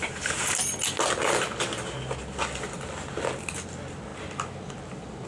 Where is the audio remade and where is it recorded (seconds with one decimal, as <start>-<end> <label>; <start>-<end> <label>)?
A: 0.0-5.3 recorded